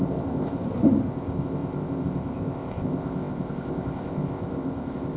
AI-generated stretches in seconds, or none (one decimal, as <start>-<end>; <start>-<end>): 0.0-0.6; 1.1-5.2

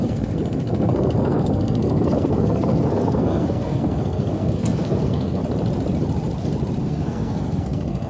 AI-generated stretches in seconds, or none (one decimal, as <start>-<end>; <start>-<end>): 0.0-5.4; 6.8-8.1

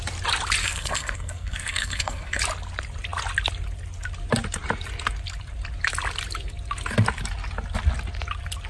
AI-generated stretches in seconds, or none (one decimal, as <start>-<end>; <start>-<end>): 0.6-2.4

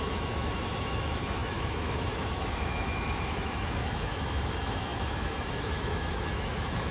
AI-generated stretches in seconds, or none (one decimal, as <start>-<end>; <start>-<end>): 0.0-6.9

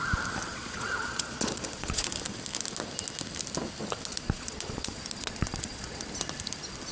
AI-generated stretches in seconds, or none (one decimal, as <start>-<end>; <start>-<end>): 0.5-2.1; 4.1-6.0